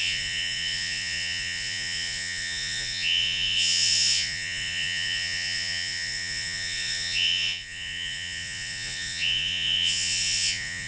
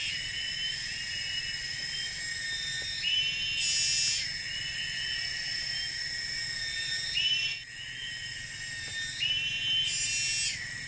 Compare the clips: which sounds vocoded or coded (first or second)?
first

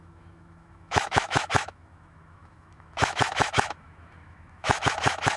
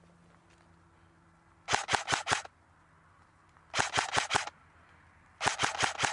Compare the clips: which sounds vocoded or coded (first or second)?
first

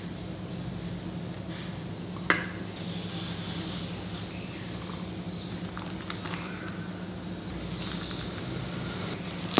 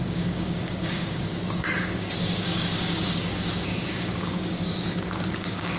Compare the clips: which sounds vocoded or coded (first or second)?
second